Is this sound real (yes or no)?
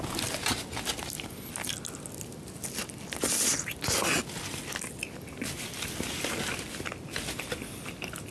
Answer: yes